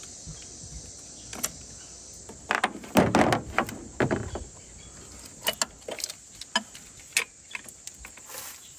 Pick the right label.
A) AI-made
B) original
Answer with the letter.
B